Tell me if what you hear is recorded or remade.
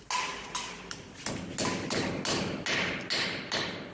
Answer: recorded